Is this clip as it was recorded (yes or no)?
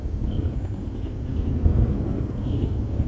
no